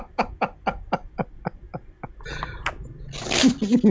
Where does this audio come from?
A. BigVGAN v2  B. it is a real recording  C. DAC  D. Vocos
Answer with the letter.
B